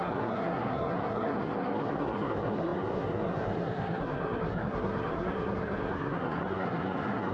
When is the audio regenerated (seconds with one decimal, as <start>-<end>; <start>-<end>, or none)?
0.0-7.3